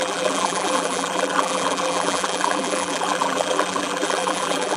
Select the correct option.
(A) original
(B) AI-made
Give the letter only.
B